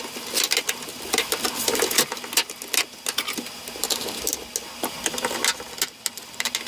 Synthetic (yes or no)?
no